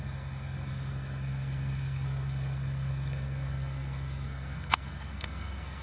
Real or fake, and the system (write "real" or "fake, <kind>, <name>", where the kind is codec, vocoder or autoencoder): fake, codec, SNAC